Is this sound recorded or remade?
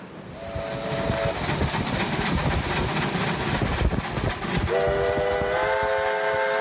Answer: recorded